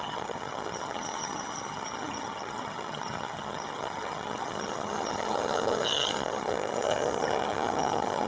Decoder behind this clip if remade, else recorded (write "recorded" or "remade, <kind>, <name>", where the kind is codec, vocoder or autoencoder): remade, vocoder, HiFi-GAN